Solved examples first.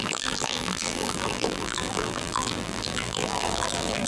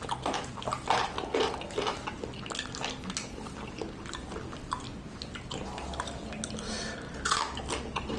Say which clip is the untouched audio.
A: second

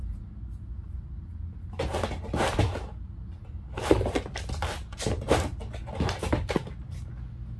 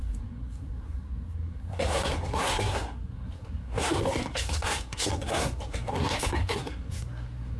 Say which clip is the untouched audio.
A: first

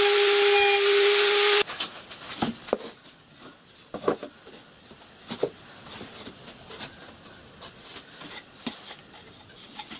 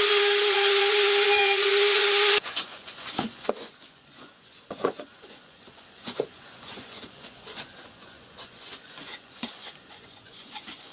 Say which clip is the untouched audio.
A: first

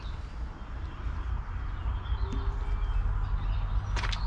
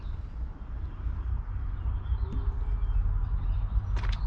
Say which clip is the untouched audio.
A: first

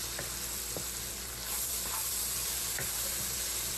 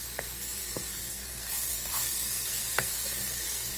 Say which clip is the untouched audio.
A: first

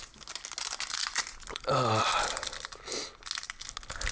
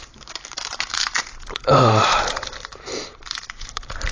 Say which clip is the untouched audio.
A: first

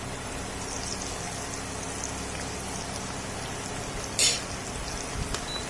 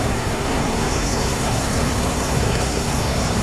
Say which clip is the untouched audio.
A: first